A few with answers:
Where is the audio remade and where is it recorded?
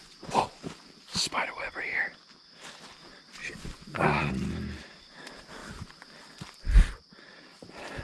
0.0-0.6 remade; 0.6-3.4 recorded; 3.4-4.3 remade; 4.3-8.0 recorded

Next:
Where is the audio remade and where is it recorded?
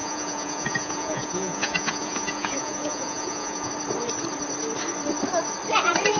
0.0-3.7 remade; 3.7-6.2 recorded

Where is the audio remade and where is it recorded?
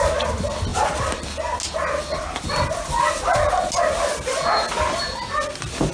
0.0-5.9 recorded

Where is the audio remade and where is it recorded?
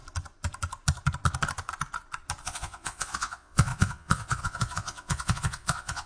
0.0-2.4 recorded; 2.4-6.1 remade